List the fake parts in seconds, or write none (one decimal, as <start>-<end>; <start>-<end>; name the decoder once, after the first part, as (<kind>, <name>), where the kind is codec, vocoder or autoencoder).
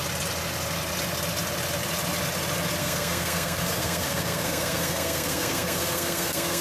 2.8-6.6 (codec, SNAC)